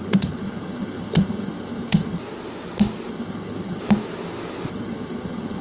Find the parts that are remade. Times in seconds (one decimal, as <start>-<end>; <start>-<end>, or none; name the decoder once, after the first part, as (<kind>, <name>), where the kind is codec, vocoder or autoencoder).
0.0-2.2 (vocoder, HiFi-GAN); 3.1-3.8; 4.7-5.6